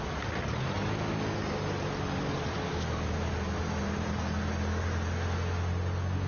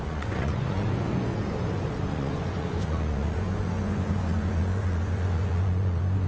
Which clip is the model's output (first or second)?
second